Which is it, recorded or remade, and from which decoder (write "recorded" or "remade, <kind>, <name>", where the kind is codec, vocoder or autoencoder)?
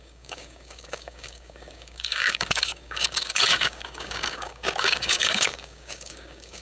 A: remade, codec, DAC